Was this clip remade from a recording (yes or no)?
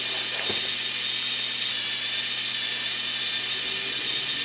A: no